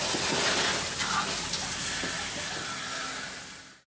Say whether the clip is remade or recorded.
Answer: recorded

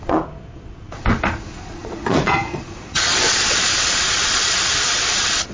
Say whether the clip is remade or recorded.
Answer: remade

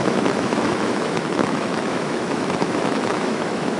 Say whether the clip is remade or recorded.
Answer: remade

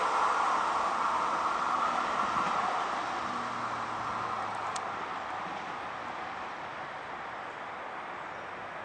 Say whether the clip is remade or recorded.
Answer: recorded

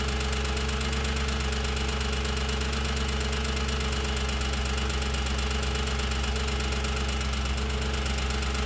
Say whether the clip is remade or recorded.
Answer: recorded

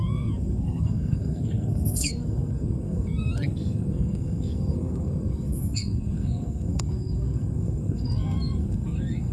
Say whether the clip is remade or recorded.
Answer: remade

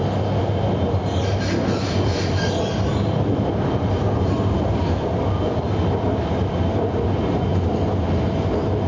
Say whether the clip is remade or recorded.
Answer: recorded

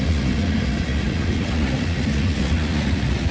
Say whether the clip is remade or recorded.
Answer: remade